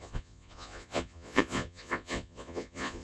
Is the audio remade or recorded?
remade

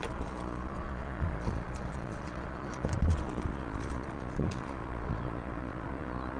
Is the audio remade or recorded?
remade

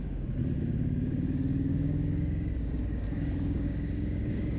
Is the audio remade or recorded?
remade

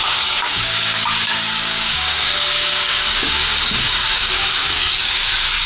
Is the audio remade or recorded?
remade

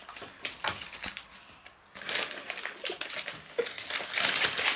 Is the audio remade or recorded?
recorded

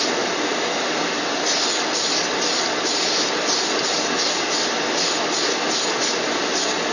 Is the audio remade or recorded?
recorded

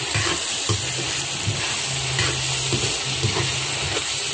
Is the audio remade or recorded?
recorded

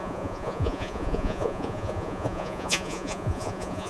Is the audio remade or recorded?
remade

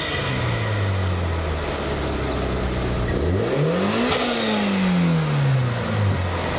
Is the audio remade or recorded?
recorded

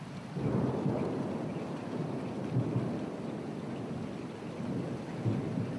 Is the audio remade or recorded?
recorded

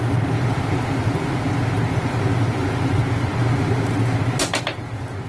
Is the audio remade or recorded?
recorded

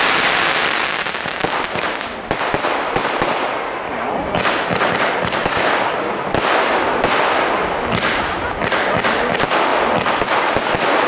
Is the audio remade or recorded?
recorded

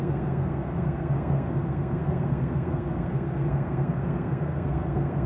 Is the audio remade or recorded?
remade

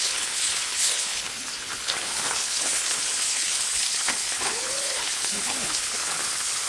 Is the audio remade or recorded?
remade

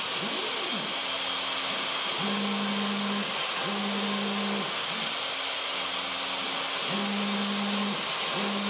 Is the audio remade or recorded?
recorded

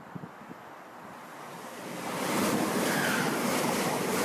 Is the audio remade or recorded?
remade